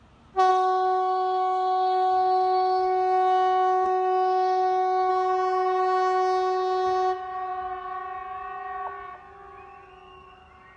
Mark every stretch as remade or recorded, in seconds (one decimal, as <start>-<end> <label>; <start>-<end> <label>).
0.0-0.5 recorded; 0.5-5.1 remade; 5.1-10.8 recorded

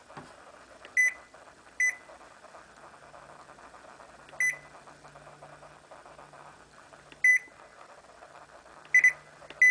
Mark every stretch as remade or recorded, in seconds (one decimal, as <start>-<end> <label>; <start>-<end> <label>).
0.0-9.7 recorded

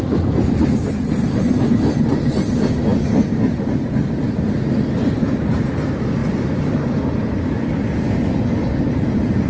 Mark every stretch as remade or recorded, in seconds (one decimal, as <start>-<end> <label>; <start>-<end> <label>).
0.0-9.5 recorded

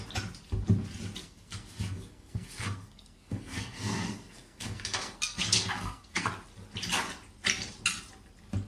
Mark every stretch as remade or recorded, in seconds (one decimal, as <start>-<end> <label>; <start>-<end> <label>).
0.0-1.2 recorded; 1.2-6.3 remade; 6.3-8.7 recorded